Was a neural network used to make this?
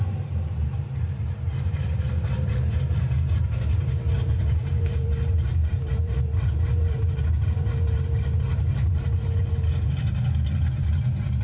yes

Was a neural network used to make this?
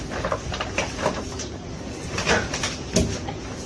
no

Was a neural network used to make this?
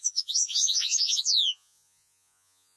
yes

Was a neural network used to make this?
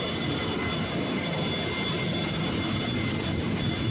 no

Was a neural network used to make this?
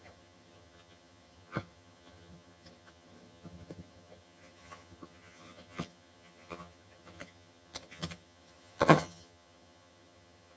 yes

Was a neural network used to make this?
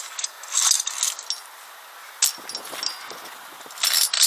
no